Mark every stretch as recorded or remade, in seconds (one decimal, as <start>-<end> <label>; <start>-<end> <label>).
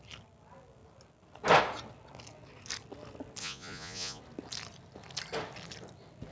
0.0-3.4 recorded; 3.4-4.2 remade; 4.2-6.3 recorded